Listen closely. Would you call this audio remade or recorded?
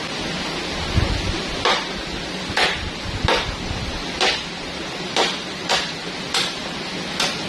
recorded